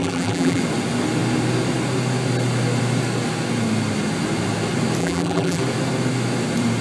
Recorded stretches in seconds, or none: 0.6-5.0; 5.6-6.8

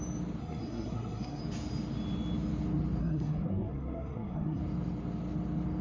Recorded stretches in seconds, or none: 0.0-0.4; 1.4-3.0; 4.6-5.8

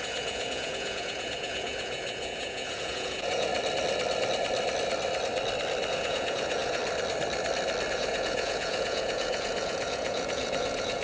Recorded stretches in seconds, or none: 3.5-5.9; 6.8-7.9

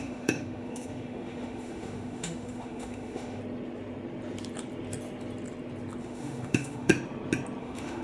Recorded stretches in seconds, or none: 3.4-6.0; 6.9-7.6

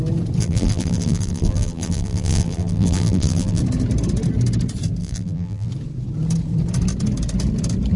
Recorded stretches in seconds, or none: 0.0-0.4; 3.6-5.0; 5.7-8.0

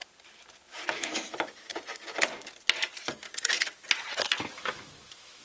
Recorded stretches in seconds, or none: 0.0-0.9; 1.7-4.6

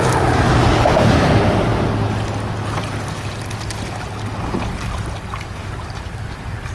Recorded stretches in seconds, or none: 1.7-5.7

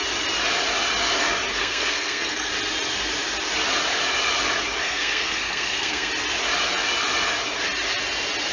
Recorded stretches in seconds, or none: 0.0-1.6; 2.5-4.8; 6.1-8.5